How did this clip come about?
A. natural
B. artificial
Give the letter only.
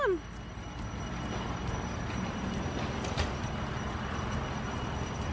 A